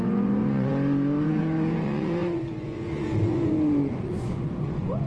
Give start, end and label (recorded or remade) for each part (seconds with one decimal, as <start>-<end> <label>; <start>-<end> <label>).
0.0-5.1 remade